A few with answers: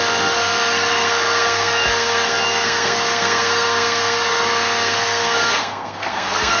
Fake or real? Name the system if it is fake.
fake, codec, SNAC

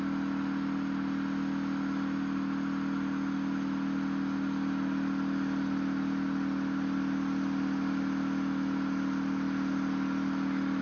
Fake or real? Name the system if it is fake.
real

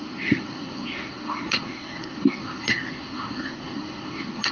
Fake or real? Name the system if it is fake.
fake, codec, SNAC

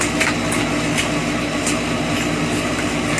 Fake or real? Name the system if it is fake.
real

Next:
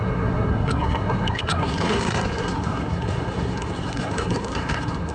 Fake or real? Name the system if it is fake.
fake, codec, SNAC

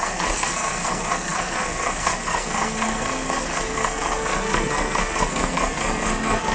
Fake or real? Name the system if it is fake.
fake, codec, SNAC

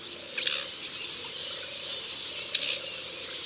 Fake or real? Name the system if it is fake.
real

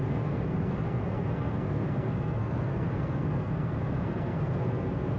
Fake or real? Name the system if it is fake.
fake, codec, SNAC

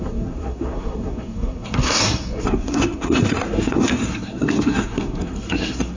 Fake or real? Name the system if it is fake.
fake, codec, SNAC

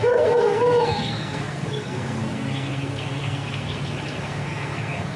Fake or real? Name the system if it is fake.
fake, codec, SNAC